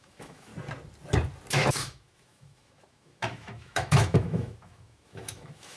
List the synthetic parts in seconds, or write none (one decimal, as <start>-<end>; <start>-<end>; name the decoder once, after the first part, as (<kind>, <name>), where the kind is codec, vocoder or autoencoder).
0.0-0.5 (autoencoder, DAC-VAE); 1.5-5.8